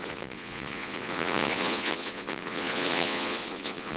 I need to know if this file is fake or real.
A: fake